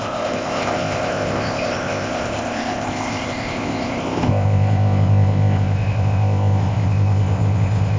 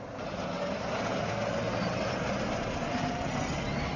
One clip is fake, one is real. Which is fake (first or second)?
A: first